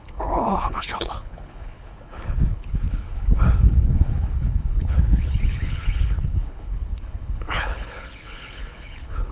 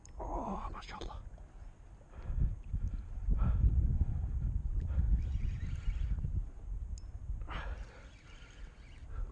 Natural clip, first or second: second